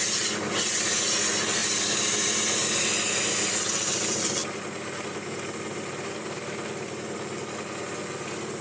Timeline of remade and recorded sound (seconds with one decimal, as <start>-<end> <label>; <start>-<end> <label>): 0.0-8.6 recorded